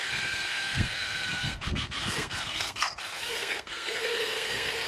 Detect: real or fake fake